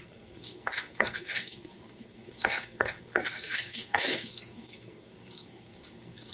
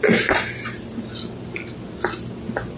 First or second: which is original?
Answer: second